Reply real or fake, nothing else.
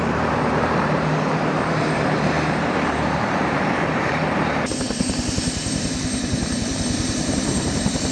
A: fake